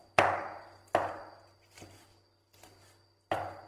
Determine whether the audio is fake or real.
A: real